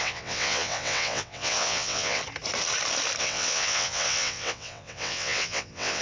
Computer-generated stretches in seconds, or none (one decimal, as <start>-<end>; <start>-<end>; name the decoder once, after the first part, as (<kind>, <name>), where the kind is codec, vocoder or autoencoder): 0.0-2.2 (vocoder, WaveNeXt); 3.2-6.0